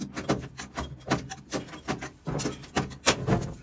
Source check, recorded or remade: recorded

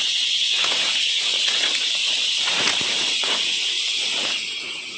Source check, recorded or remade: remade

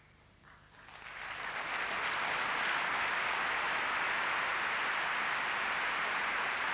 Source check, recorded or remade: recorded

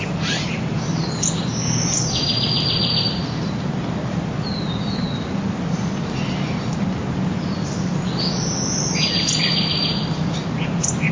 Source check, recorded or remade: recorded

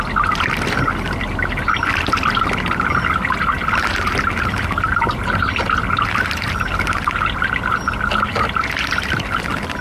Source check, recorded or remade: recorded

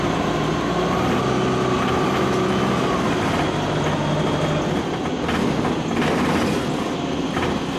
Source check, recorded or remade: recorded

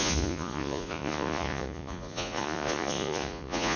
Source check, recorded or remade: remade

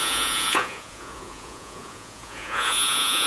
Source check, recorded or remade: remade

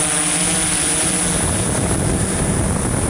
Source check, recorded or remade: recorded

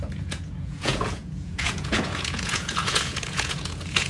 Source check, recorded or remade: remade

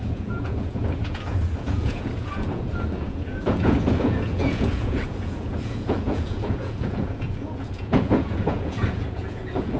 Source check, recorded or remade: remade